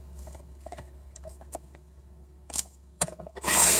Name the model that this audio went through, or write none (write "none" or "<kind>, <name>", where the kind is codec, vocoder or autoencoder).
codec, SNAC